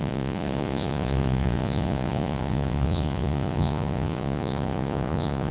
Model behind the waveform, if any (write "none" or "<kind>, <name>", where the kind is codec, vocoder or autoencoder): vocoder, Vocos